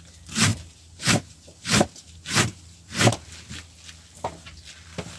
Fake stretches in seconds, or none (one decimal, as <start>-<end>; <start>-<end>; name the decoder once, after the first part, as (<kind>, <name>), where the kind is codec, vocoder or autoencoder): 0.5-3.1 (vocoder, BigVGAN v2)